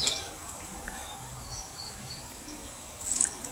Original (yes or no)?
no